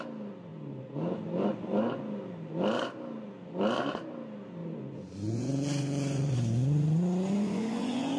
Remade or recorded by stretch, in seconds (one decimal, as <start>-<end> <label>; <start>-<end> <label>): 0.0-4.6 recorded; 4.6-8.2 remade